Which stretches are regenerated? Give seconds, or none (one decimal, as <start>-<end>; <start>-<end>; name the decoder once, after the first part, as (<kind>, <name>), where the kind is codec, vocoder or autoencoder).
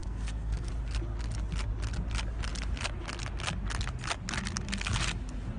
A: 0.0-0.7 (codec, SNAC)